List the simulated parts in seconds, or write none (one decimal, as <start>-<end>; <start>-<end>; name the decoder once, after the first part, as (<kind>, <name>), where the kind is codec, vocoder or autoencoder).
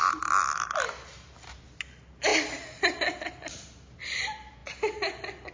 none